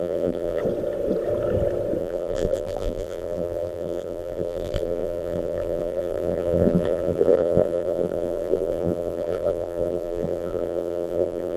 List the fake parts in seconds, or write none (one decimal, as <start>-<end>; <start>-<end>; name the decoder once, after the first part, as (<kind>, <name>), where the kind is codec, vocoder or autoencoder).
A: 0.0-0.6 (vocoder, BigVGAN v2); 2.0-11.6